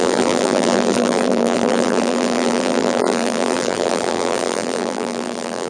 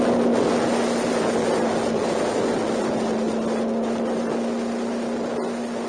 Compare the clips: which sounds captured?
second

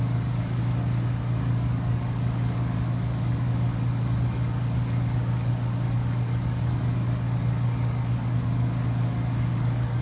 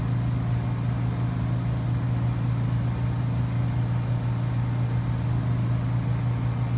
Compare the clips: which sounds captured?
second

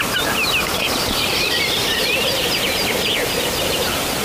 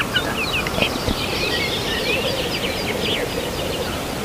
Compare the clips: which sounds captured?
second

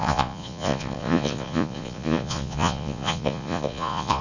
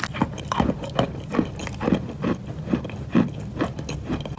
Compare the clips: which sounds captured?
second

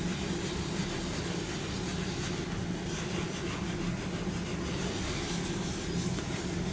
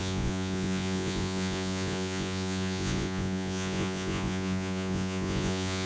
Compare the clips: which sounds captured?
first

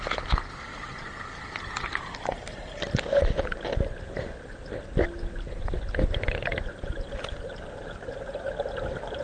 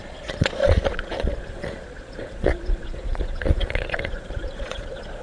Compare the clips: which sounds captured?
first